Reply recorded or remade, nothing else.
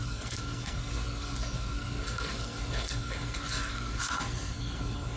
remade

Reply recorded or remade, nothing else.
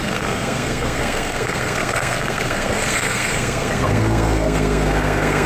remade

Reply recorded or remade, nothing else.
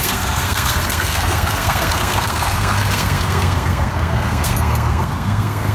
remade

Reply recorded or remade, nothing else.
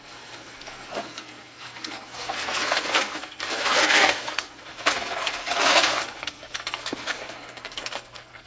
remade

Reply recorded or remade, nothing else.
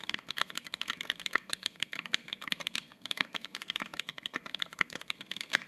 remade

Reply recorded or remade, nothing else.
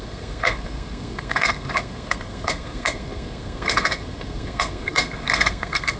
remade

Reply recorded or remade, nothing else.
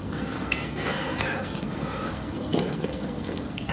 remade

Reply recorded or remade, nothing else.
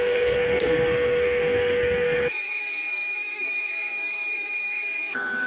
remade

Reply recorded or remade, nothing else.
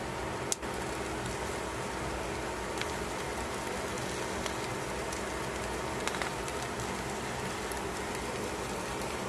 recorded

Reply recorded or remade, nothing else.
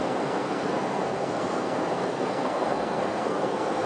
remade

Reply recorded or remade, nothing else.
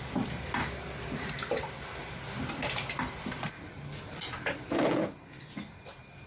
recorded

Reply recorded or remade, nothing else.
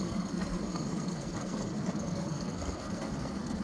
remade